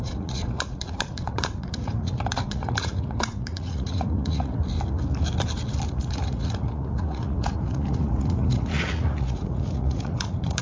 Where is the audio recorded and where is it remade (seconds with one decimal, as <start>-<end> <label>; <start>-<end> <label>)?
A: 0.0-4.6 remade; 4.6-5.9 recorded; 5.9-10.6 remade